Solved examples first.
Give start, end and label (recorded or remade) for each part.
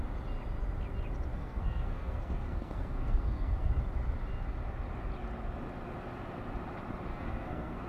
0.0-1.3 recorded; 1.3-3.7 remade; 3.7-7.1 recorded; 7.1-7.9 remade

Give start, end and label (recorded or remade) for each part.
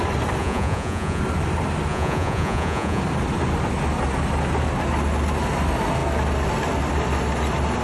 0.0-0.4 recorded; 0.4-1.2 remade; 1.2-1.9 recorded; 1.9-3.0 remade; 3.0-7.8 recorded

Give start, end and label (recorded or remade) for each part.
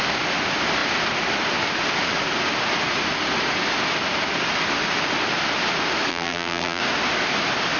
0.0-6.1 recorded; 6.1-6.8 remade; 6.8-7.8 recorded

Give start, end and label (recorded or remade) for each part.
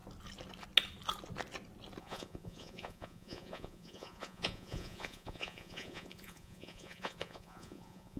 0.0-2.0 recorded; 2.0-8.2 remade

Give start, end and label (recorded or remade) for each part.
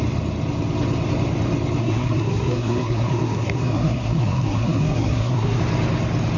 0.0-1.8 recorded; 1.8-5.6 remade; 5.6-6.4 recorded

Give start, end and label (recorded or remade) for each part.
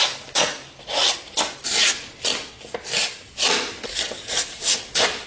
0.0-5.3 recorded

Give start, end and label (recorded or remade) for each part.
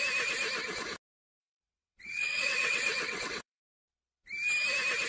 0.0-1.4 recorded; 1.4-3.6 remade; 3.6-5.1 recorded